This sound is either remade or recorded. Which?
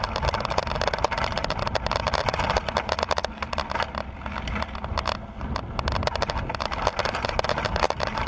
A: recorded